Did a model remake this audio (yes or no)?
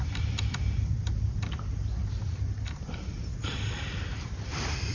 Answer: yes